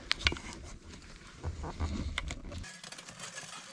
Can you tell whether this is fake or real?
real